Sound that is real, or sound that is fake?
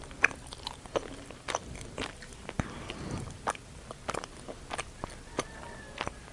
real